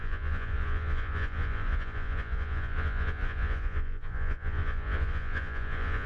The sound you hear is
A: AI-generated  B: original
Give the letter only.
A